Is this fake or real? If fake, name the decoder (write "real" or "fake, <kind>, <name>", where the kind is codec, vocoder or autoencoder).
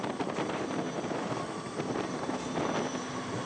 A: real